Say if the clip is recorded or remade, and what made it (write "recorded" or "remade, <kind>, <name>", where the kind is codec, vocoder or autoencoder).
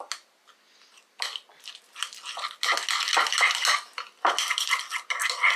recorded